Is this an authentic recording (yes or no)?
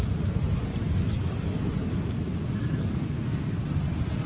yes